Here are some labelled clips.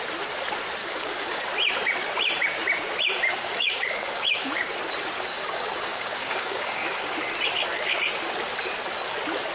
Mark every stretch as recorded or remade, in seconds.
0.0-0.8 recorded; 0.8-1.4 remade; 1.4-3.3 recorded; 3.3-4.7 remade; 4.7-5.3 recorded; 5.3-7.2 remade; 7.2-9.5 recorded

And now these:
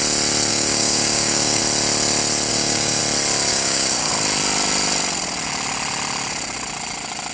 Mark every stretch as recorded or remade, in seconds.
0.0-0.5 recorded; 0.5-1.6 remade; 1.6-2.5 recorded; 2.5-3.0 remade; 3.0-3.5 recorded; 3.5-4.1 remade; 4.1-7.3 recorded

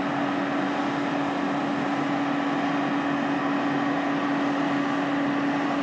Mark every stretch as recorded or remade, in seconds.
0.0-5.8 recorded